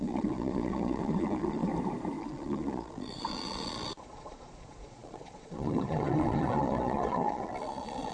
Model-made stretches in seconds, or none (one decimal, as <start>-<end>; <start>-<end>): 0.0-1.7; 2.2-8.1